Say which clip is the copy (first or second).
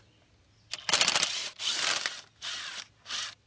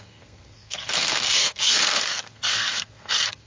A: second